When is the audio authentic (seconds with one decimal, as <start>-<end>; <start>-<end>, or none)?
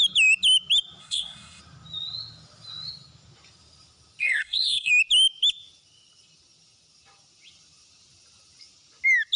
0.0-1.0; 1.6-4.2; 4.9-9.4